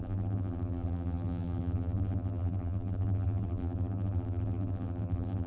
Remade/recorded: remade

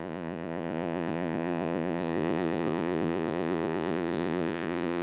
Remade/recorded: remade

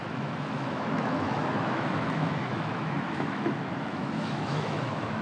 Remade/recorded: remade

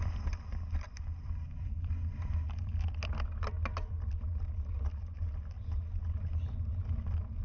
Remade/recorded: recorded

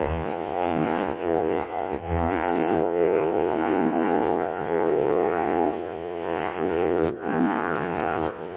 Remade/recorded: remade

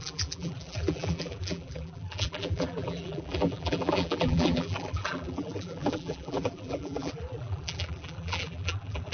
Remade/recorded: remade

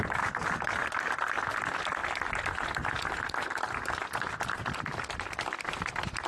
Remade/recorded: recorded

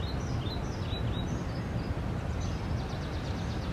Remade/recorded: recorded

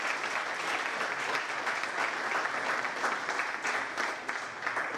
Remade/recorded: recorded